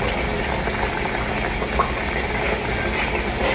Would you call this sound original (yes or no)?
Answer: yes